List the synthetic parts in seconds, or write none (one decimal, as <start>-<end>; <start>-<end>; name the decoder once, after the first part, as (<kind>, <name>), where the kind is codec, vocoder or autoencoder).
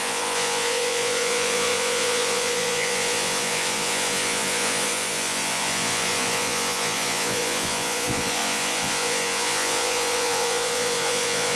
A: 0.0-11.6 (vocoder, Vocos)